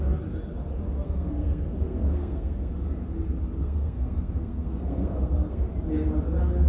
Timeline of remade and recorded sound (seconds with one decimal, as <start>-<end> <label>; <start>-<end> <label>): 0.0-0.9 recorded; 0.9-2.7 remade; 2.7-3.6 recorded; 3.6-5.7 remade; 5.7-6.7 recorded

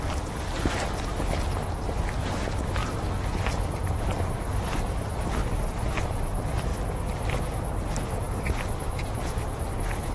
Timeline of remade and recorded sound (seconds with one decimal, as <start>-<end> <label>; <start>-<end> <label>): 0.0-10.1 recorded

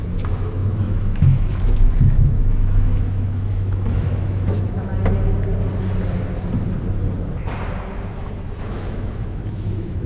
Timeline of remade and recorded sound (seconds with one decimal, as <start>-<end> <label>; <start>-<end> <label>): 0.0-4.9 remade; 4.9-8.2 recorded; 8.2-10.1 remade

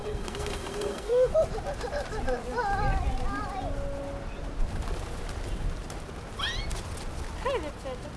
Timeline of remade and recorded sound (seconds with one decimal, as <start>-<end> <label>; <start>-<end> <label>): 0.0-1.3 remade; 1.3-8.2 recorded

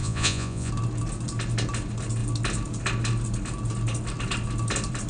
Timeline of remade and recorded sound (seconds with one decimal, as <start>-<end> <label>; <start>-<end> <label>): 0.0-0.7 remade; 0.7-5.1 recorded

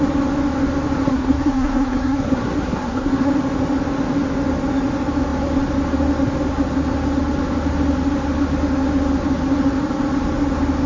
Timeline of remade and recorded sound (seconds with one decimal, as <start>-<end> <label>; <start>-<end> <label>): 0.0-1.0 recorded; 1.0-3.3 remade; 3.3-10.9 recorded